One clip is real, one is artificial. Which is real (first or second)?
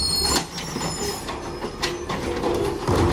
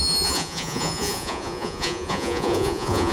first